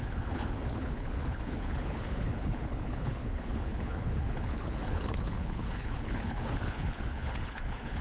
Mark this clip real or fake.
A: fake